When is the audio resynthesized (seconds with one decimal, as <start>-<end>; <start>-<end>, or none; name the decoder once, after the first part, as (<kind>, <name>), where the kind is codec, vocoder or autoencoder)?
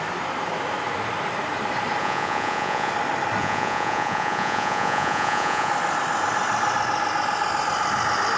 2.0-2.9 (vocoder, Vocos); 3.4-5.7